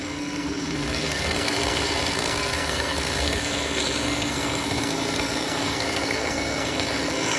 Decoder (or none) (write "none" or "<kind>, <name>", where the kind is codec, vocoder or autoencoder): codec, SNAC